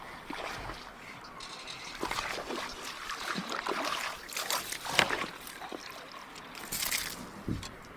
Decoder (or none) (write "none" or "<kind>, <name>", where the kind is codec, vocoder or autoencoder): vocoder, BigVGAN v2